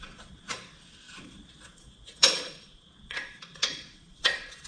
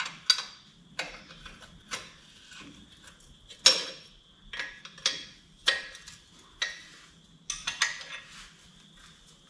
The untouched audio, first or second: second